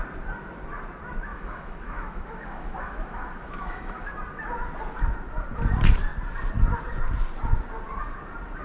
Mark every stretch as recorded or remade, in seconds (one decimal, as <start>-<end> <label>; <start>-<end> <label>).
0.0-1.3 recorded; 1.3-4.1 remade; 4.1-8.6 recorded